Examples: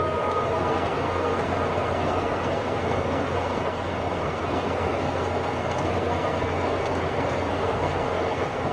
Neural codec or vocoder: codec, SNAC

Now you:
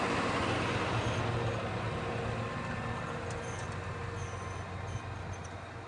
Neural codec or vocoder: none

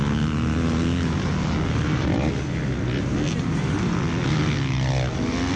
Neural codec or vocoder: none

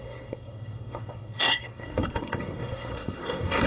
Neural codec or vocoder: codec, SNAC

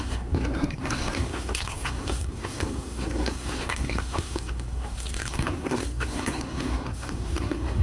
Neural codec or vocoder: codec, SNAC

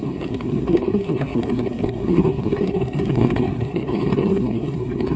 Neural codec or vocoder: codec, SNAC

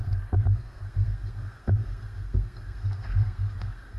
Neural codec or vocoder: codec, SNAC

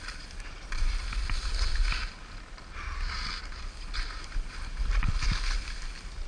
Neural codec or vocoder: none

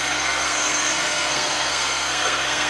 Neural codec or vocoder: codec, SNAC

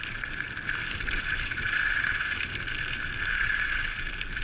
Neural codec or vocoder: none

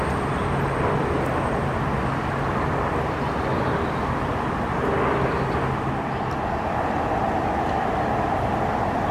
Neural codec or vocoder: none